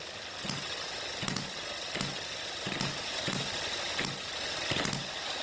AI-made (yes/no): no